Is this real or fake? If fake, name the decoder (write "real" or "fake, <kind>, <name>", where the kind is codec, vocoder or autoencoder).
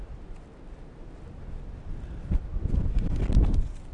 real